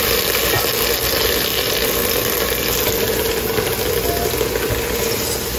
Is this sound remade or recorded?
recorded